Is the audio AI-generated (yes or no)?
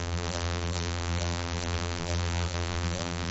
yes